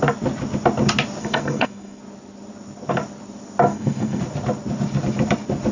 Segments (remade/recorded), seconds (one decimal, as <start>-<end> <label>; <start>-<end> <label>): 0.0-1.2 recorded; 1.2-2.0 remade; 2.0-3.7 recorded; 3.7-4.2 remade; 4.2-5.7 recorded